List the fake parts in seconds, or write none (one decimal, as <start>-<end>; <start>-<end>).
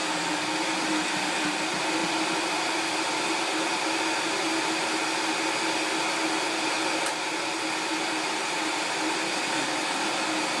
none